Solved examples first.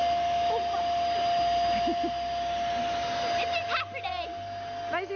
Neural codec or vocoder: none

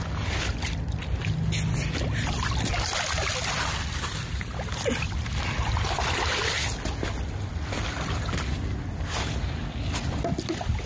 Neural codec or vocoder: none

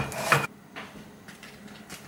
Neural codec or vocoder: none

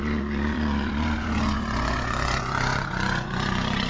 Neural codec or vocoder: vocoder, Vocos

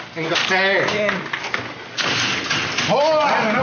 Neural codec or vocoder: none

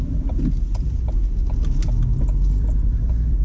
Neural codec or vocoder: none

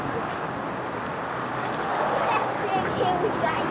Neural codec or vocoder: none